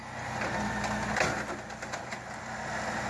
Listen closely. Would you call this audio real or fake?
real